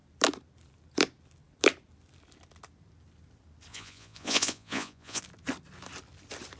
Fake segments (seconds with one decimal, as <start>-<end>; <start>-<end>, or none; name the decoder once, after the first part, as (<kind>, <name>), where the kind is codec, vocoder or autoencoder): 3.7-5.2 (vocoder, Vocos)

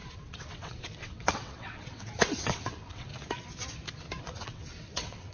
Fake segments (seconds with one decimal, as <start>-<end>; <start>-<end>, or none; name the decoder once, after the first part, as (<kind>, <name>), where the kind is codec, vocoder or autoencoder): 0.0-3.1 (vocoder, WaveNeXt); 4.2-5.3

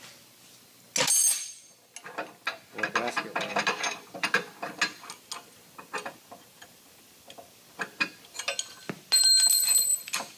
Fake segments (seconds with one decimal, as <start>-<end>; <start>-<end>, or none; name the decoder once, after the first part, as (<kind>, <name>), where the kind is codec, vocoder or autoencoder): none

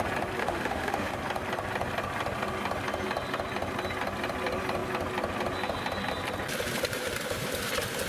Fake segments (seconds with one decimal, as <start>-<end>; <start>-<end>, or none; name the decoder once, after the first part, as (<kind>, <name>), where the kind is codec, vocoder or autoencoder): 0.4-1.1 (autoencoder, DAC-VAE)

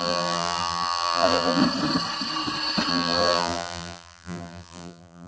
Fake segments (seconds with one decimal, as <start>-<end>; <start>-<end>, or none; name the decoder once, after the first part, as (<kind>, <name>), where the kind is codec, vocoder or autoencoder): 0.0-1.6 (vocoder, BigVGAN v2); 2.9-5.3

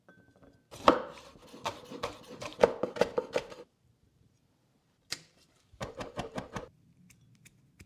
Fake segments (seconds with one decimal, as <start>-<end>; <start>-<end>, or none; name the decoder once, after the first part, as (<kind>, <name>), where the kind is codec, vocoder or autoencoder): 1.7-6.4 (vocoder, BigVGAN v2)